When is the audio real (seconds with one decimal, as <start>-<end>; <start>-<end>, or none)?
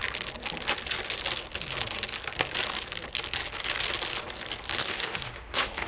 0.0-4.8